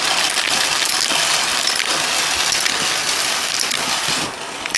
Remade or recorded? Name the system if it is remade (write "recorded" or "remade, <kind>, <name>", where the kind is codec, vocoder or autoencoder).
recorded